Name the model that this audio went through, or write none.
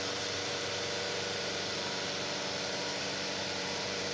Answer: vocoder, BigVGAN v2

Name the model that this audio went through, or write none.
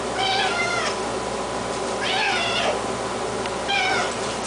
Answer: none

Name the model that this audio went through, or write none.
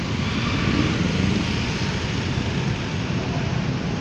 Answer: none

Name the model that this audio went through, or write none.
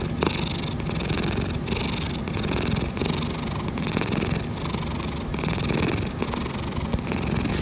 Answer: none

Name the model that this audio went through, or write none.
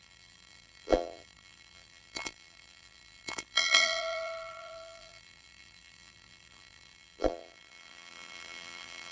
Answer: vocoder, BigVGAN v2